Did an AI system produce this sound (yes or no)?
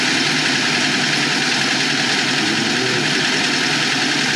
no